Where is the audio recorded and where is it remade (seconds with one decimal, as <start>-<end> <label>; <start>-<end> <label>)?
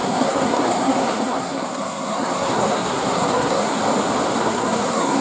0.0-3.8 remade; 3.8-4.4 recorded; 4.4-5.2 remade